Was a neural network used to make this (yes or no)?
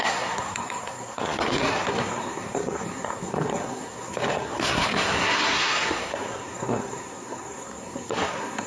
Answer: yes